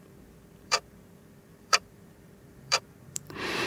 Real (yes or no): no